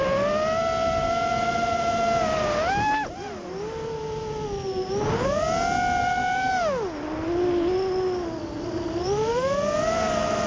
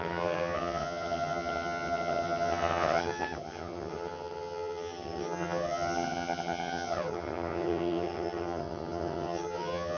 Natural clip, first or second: first